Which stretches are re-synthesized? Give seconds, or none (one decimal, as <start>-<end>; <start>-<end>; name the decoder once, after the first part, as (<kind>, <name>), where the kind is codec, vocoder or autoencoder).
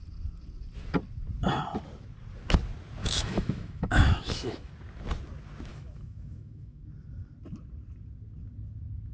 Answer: 3.0-4.7 (autoencoder, DAC-VAE); 5.7-6.8